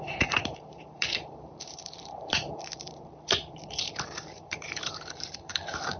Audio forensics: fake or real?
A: fake